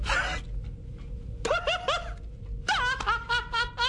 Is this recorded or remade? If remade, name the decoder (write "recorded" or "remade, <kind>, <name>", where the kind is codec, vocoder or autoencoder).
recorded